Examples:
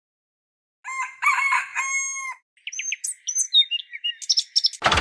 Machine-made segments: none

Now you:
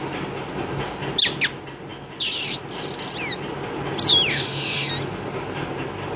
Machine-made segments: 4.3-4.9 (autoencoder, DAC-VAE)